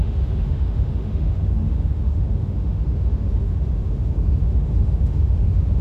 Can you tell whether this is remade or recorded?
remade